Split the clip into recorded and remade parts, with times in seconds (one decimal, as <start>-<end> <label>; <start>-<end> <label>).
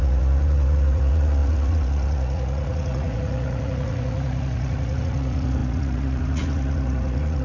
0.0-7.4 remade